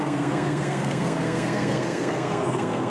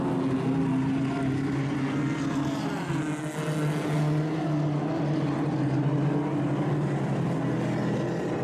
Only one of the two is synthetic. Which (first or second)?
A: first